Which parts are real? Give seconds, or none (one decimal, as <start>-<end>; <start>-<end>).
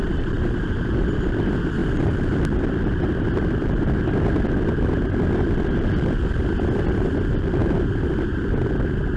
1.8-4.0